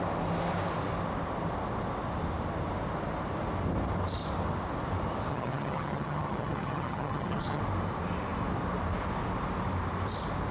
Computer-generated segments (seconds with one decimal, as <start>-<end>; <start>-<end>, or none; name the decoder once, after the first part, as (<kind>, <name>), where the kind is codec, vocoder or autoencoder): 5.3-7.6 (vocoder, HiFi-GAN)